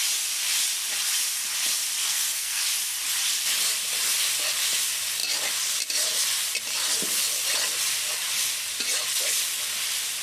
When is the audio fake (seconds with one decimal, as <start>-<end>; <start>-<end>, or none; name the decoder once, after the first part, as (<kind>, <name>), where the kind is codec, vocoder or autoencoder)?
2.0-2.6 (codec, SNAC)